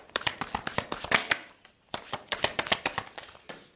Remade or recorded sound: remade